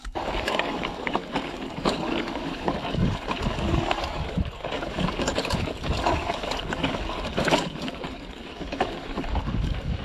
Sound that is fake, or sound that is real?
fake